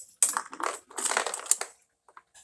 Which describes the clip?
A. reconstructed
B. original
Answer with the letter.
B